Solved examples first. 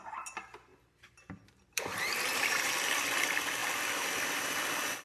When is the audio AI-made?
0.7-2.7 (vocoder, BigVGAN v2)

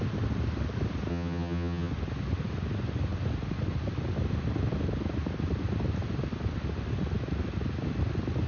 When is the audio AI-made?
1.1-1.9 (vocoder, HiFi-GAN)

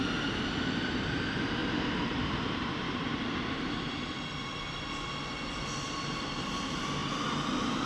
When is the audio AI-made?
1.6-3.2 (vocoder, BigVGAN v2); 7.0-7.9